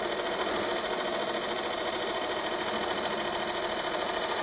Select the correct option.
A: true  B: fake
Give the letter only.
B